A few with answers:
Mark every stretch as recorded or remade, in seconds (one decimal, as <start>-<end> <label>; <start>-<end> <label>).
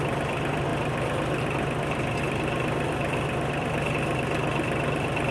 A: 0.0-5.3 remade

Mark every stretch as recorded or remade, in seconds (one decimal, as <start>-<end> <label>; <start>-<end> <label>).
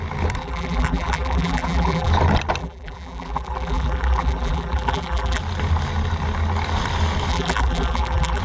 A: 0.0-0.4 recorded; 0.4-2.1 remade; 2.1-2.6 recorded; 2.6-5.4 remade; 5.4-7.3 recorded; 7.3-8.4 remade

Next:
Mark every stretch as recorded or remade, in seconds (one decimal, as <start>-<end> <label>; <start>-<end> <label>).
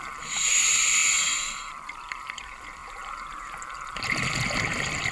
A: 0.0-2.8 recorded; 2.8-3.4 remade; 3.4-5.1 recorded